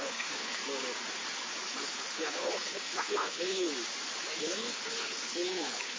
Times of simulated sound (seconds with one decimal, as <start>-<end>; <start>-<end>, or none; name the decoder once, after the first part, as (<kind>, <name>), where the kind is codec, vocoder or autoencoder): 0.0-0.6 (codec, HILCodec); 1.8-3.7; 4.4-6.0